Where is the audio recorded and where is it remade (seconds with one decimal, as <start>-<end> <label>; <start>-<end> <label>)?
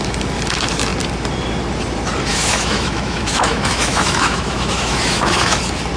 0.0-2.3 recorded; 2.3-5.6 remade; 5.6-6.0 recorded